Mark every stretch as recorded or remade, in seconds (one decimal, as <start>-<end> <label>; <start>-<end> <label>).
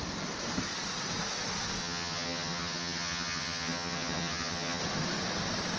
0.0-1.8 recorded; 1.8-4.8 remade; 4.8-5.8 recorded